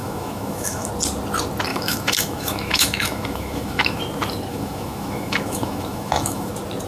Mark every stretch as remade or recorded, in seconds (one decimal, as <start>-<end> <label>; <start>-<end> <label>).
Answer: 0.0-0.9 remade; 0.9-1.7 recorded; 1.7-4.0 remade; 4.0-4.5 recorded; 4.5-6.5 remade; 6.5-6.9 recorded

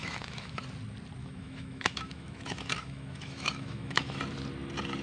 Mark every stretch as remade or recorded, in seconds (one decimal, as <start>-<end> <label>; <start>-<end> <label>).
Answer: 0.0-0.6 remade; 0.6-1.2 recorded; 1.2-4.2 remade; 4.2-5.0 recorded

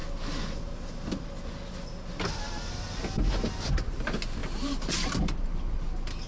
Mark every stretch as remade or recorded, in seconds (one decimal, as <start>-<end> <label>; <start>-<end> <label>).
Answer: 0.0-6.3 recorded

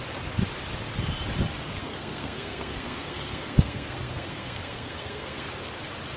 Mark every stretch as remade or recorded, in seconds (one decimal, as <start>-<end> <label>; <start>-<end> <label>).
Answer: 0.0-1.8 recorded; 1.8-5.5 remade; 5.5-6.2 recorded